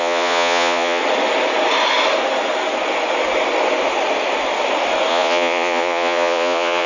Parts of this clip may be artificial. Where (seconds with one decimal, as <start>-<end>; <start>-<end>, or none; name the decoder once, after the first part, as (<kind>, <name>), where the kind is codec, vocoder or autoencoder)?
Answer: 0.0-1.0 (vocoder, Vocos); 5.1-6.9